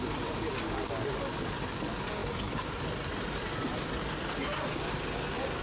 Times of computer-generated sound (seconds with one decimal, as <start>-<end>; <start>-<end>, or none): 2.2-3.4